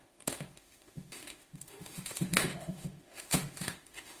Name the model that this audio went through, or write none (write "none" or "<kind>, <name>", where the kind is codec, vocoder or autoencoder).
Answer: autoencoder, DAC-VAE